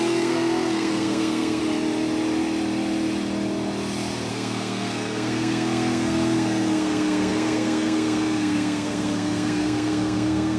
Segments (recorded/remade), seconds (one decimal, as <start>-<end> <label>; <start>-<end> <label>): 0.0-1.6 remade; 1.6-4.3 recorded; 4.3-10.6 remade